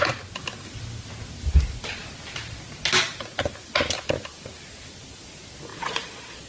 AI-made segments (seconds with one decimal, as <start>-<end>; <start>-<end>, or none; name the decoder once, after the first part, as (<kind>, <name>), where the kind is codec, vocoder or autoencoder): 5.7-6.5 (vocoder, Vocos)